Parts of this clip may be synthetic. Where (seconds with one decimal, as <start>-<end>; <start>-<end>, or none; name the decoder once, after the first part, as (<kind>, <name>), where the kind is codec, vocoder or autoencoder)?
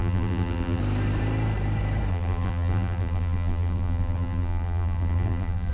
0.0-0.8 (vocoder, BigVGAN v2); 2.1-5.7